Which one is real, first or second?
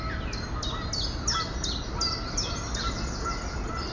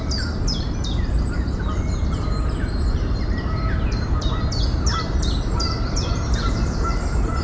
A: first